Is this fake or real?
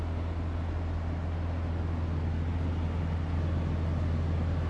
real